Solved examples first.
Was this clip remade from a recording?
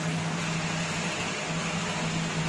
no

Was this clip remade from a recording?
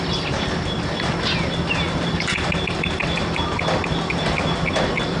no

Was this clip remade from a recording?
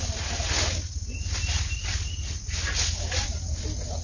no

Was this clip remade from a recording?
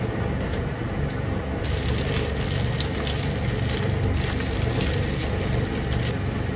no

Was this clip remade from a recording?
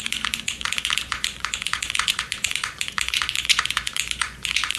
yes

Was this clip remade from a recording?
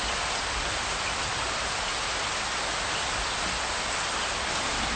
no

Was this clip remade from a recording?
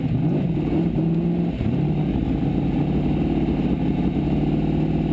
no